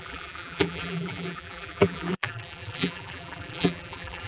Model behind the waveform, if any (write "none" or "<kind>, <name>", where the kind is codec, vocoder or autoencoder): vocoder, BigVGAN v2